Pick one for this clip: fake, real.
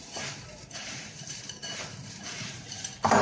fake